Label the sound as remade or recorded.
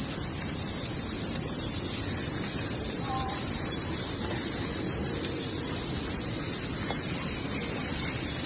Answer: remade